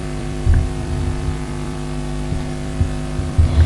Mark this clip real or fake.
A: fake